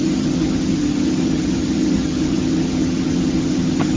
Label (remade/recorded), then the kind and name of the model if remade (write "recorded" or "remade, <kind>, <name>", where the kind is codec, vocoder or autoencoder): remade, vocoder, HiFi-GAN